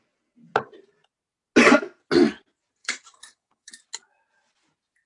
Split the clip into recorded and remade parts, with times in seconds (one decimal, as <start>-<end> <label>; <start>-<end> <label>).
0.0-2.8 recorded; 2.8-3.7 remade; 3.7-5.1 recorded